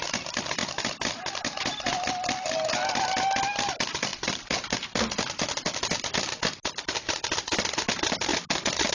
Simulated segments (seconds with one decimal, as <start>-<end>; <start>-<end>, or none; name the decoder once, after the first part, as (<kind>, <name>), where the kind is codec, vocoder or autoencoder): 0.6-3.2 (vocoder, BigVGAN v2)